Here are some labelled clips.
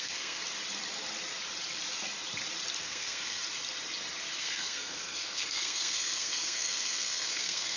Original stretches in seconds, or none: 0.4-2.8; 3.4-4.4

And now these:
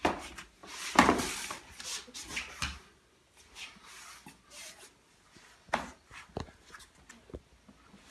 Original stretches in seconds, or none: 0.0-8.1

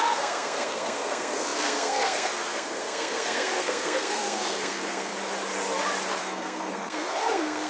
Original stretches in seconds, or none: 5.1-6.2